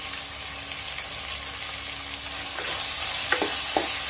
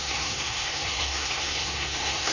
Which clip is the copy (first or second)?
second